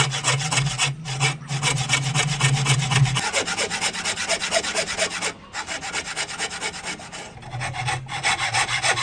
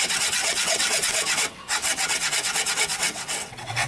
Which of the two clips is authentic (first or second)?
first